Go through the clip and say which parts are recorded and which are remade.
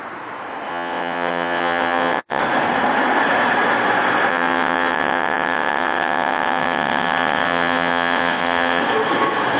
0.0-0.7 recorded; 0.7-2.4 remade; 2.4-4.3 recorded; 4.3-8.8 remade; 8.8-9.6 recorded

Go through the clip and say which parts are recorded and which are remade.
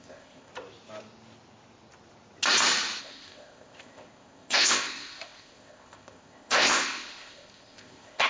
0.0-0.5 remade; 0.5-3.0 recorded; 3.0-8.3 remade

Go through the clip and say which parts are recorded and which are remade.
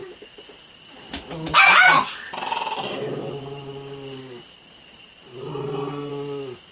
0.0-5.5 recorded; 5.5-6.1 remade; 6.1-6.7 recorded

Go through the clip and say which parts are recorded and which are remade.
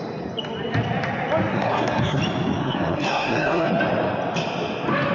0.0-1.5 recorded; 1.5-2.2 remade; 2.2-2.6 recorded; 2.6-3.8 remade; 3.8-5.1 recorded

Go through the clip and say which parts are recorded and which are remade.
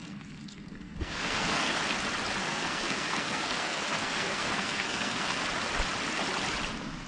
0.0-1.8 remade; 1.8-2.4 recorded; 2.4-5.4 remade; 5.4-7.1 recorded